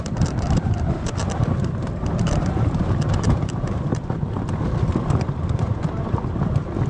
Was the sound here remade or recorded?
remade